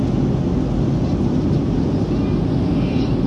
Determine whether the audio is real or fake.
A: real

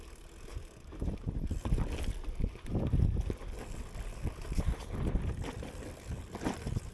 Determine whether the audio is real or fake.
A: real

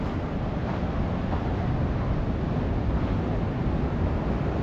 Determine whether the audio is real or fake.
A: real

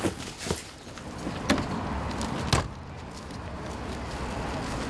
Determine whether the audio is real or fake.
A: real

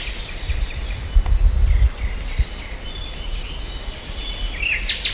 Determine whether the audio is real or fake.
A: real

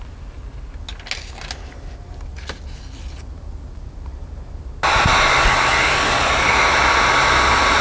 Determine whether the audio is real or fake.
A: real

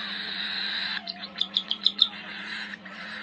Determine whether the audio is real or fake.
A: fake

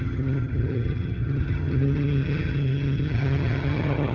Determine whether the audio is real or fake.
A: fake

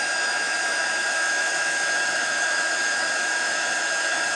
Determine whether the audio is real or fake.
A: fake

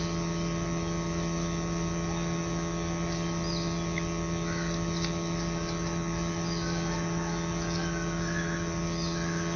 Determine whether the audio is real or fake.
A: real